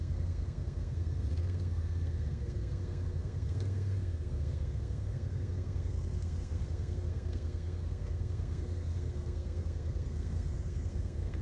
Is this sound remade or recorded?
remade